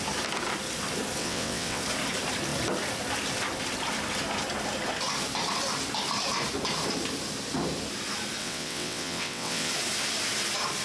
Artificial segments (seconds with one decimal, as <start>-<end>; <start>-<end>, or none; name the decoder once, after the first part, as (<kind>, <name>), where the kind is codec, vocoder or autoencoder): 1.2-1.8 (vocoder, WaveNeXt); 8.4-9.7